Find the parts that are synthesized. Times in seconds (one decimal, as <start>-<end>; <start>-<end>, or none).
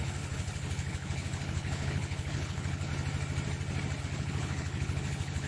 0.0-2.9; 4.0-5.5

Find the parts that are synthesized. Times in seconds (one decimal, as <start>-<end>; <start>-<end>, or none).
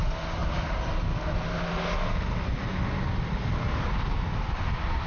none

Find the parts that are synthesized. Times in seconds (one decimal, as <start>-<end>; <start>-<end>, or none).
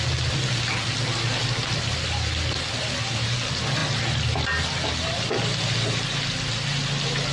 none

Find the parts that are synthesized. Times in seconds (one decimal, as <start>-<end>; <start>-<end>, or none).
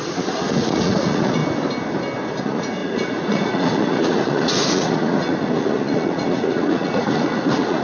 0.0-1.4; 2.4-7.8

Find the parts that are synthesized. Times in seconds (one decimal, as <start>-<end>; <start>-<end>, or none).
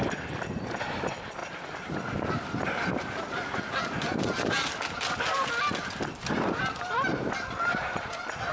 0.0-8.5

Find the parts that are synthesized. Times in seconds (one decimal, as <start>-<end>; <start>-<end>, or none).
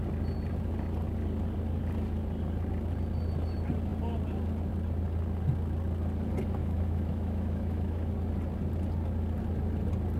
6.6-8.1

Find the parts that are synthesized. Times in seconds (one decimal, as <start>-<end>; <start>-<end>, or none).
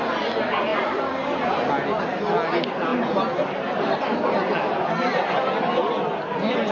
none